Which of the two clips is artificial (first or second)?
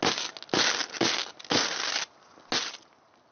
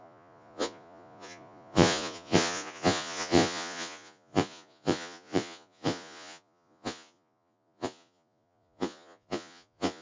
second